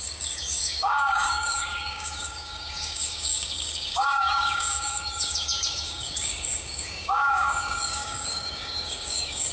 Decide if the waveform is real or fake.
fake